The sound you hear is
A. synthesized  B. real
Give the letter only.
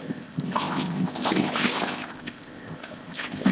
A